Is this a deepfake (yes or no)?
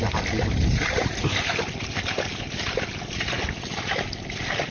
no